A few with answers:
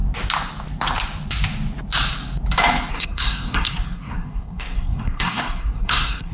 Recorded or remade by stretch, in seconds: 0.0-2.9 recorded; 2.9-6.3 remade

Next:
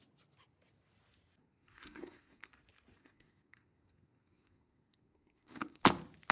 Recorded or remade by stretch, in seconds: 0.0-1.4 recorded; 1.4-2.5 remade; 2.5-3.0 recorded; 3.0-5.8 remade; 5.8-6.3 recorded

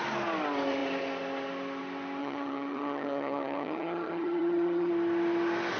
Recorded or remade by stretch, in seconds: 0.0-2.2 recorded; 2.2-4.9 remade; 4.9-5.8 recorded

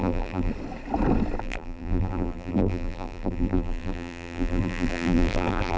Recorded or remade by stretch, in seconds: 0.0-0.5 remade; 0.5-1.4 recorded; 1.4-5.8 remade

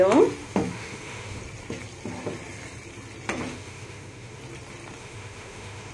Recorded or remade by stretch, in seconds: 0.0-0.4 recorded; 0.4-1.4 remade; 1.4-3.5 recorded; 3.5-4.4 remade; 4.4-5.0 recorded; 5.0-5.9 remade